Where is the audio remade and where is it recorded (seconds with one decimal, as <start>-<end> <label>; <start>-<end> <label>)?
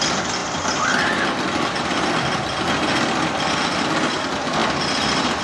0.0-4.6 recorded; 4.6-5.4 remade